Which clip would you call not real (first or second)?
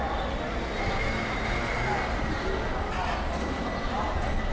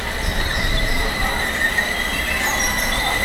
second